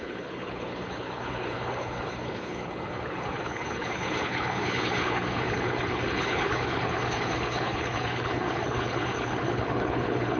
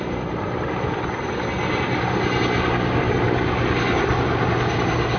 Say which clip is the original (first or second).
second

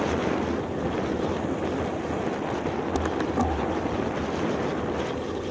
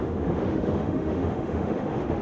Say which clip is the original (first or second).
first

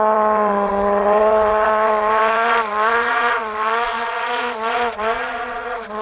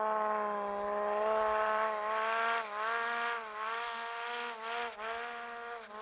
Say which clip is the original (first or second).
second